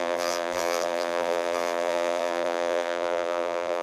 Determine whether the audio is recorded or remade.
remade